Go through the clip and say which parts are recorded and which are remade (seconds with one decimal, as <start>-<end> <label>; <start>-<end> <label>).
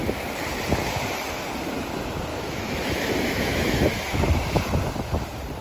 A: 0.0-2.3 recorded; 2.3-4.2 remade; 4.2-5.6 recorded